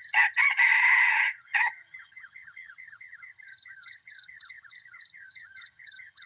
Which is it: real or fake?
fake